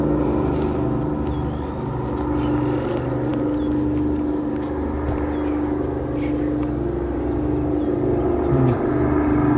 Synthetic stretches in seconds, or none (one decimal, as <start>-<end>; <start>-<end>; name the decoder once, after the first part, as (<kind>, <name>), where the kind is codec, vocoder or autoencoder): none